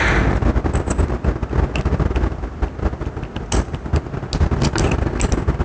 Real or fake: real